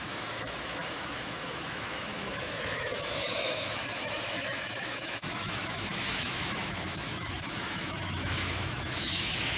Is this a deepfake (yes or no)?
yes